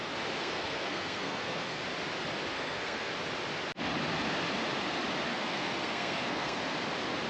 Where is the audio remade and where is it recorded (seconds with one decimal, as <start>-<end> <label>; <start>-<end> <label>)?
0.0-0.4 recorded; 0.4-1.8 remade; 1.8-2.5 recorded; 2.5-3.1 remade; 3.1-5.3 recorded; 5.3-6.6 remade; 6.6-7.3 recorded